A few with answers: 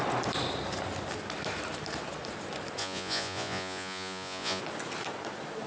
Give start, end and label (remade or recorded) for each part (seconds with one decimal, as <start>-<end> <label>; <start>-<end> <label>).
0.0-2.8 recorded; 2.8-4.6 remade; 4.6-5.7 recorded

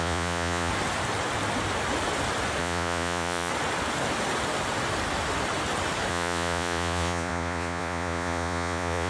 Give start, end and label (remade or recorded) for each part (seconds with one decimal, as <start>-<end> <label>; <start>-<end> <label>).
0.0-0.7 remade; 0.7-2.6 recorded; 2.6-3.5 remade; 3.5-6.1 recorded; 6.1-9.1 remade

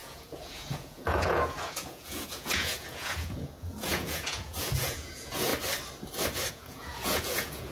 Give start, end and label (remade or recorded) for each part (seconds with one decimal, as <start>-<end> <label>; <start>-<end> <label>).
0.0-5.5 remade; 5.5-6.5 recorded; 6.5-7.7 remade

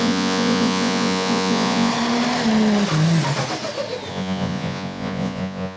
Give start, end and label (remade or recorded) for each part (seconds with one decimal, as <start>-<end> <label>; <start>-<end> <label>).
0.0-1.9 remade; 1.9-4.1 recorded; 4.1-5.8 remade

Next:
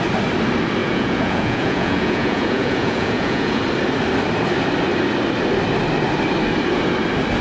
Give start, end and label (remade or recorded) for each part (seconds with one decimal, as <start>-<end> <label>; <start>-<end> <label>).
0.0-0.8 recorded; 0.8-3.6 remade; 3.6-7.4 recorded

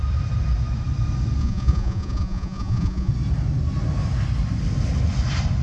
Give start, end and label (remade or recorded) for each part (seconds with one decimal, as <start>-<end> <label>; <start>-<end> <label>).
0.0-1.4 recorded; 1.4-3.1 remade; 3.1-5.6 recorded

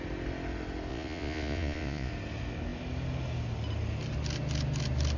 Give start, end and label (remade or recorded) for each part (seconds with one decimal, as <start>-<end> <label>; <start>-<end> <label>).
0.0-0.9 recorded; 0.9-2.1 remade; 2.1-5.2 recorded